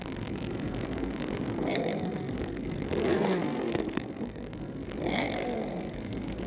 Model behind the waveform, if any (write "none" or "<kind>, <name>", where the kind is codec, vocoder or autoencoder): codec, SNAC